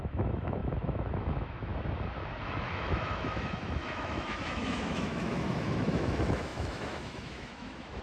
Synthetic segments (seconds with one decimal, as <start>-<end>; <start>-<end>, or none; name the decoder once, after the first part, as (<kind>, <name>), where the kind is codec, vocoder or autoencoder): 0.0-1.7 (autoencoder, DAC-VAE); 2.4-8.0